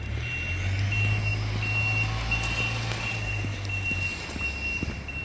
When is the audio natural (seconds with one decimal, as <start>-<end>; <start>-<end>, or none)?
0.0-5.2